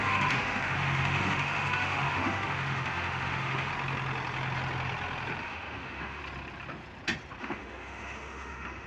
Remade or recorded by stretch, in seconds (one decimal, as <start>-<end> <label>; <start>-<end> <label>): 0.0-3.7 remade; 3.7-5.4 recorded; 5.4-6.2 remade; 6.2-7.4 recorded; 7.4-8.9 remade

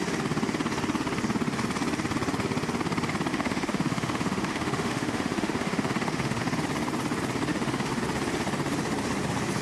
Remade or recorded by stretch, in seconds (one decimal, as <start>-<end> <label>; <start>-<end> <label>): 0.0-3.3 recorded; 3.3-6.4 remade; 6.4-7.5 recorded; 7.5-8.0 remade; 8.0-9.6 recorded